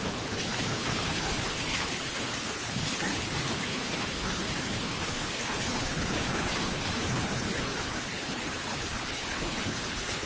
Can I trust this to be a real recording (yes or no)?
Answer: no